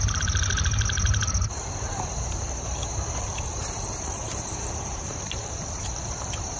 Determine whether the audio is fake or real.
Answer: fake